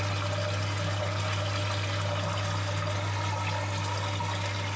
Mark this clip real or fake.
real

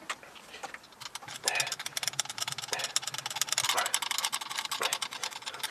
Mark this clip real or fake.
real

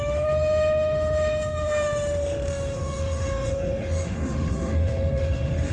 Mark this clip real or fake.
fake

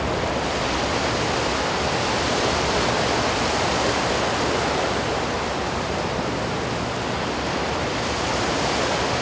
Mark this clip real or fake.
real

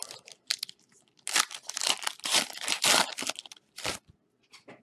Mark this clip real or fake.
real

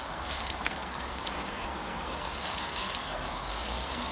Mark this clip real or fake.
fake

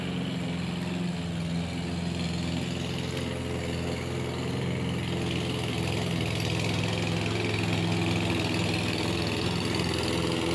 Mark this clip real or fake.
real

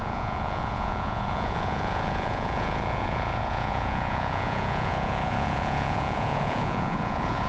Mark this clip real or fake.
fake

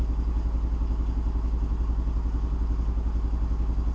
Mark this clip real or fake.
real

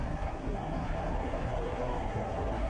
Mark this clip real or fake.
fake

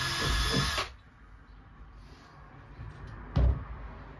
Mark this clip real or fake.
real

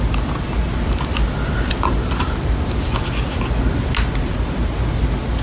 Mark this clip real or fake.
real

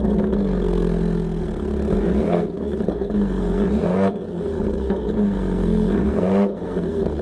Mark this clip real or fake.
fake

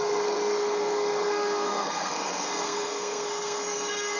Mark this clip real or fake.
fake